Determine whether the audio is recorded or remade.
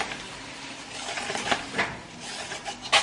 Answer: recorded